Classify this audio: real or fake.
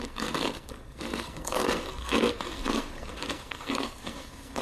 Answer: fake